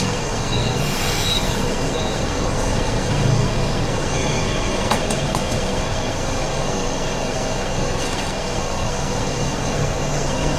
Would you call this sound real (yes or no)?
no